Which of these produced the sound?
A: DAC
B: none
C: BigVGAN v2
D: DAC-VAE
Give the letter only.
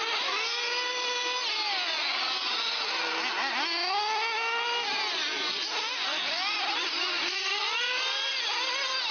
B